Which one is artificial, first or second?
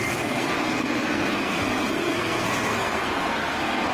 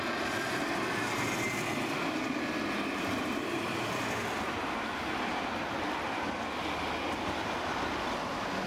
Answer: first